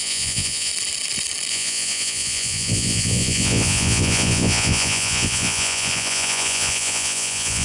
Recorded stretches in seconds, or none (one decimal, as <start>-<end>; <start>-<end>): 0.7-1.5